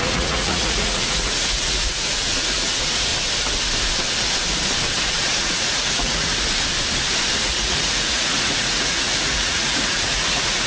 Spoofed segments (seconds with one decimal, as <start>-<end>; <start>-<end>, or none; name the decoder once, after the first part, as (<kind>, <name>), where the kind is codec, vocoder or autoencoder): 0.0-3.1 (vocoder, Vocos); 5.0-6.3; 7.4-10.7